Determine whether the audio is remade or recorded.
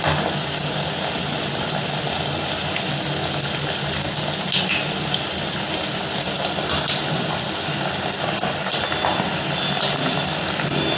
recorded